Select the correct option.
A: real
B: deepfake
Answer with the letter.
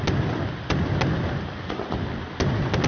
A